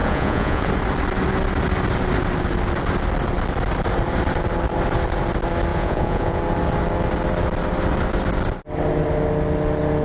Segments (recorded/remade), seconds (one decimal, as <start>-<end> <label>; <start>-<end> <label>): 0.0-0.7 remade; 0.7-5.7 recorded; 5.7-6.4 remade; 6.4-10.0 recorded